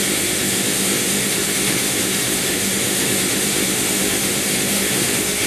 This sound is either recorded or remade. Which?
remade